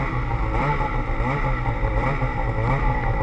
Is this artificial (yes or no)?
no